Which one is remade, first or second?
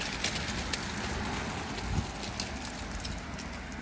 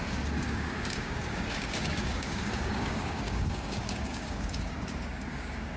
second